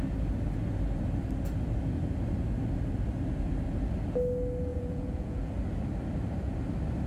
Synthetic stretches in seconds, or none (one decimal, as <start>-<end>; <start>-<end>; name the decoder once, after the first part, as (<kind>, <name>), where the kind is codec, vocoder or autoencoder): 4.7-5.5 (vocoder, Vocos)